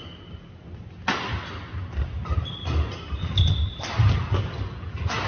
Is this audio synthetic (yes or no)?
no